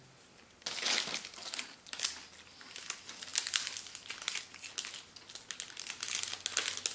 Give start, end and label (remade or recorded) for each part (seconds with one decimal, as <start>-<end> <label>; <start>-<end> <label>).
0.0-6.9 recorded